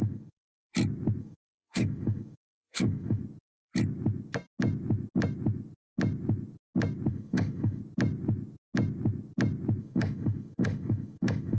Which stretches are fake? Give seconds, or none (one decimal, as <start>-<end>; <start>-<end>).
0.0-0.5; 1.2-3.2; 7.1-7.8; 9.8-11.6